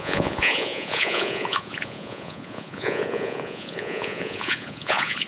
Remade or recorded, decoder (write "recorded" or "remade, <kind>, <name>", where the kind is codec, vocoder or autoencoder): remade, vocoder, Vocos